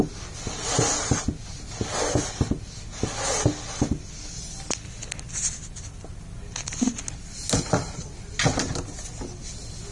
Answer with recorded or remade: recorded